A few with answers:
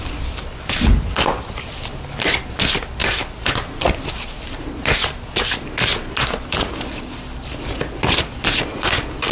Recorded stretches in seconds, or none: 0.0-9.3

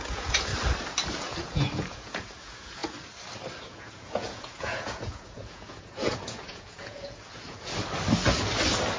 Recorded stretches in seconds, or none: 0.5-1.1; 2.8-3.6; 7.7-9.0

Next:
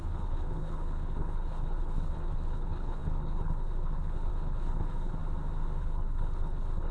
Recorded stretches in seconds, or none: 5.2-5.8